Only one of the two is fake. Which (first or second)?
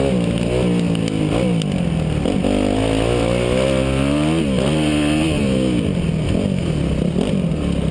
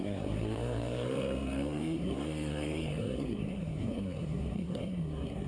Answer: second